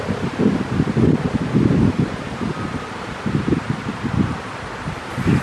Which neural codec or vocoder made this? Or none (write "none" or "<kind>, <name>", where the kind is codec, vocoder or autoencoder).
none